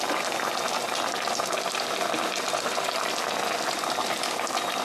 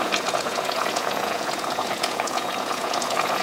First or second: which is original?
first